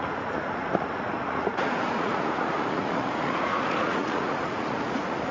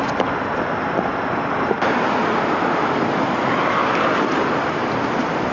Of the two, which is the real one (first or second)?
second